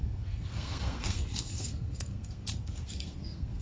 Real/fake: fake